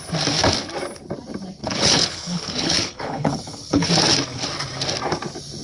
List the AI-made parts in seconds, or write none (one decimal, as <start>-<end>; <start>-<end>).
1.6-3.9